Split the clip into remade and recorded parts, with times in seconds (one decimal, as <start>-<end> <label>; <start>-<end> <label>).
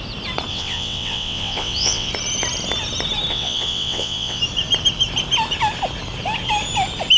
0.0-0.5 recorded; 0.5-2.1 remade; 2.1-3.3 recorded; 3.3-4.4 remade; 4.4-7.2 recorded